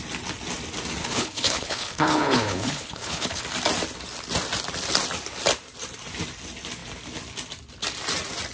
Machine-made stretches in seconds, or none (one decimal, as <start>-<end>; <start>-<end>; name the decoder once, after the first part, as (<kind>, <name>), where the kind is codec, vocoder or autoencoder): 1.0-3.4 (codec, HILCodec)